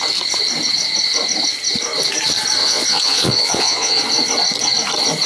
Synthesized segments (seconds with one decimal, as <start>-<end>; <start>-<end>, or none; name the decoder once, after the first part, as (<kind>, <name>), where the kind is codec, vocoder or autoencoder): 2.6-4.0 (vocoder, Vocos)